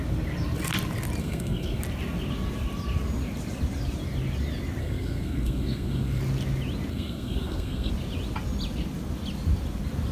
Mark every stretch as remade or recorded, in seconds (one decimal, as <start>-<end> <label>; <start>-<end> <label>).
0.0-1.2 recorded; 1.2-1.8 remade; 1.8-4.8 recorded; 4.8-6.2 remade; 6.2-6.9 recorded; 6.9-7.9 remade; 7.9-10.1 recorded